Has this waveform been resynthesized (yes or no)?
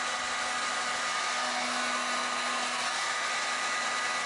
no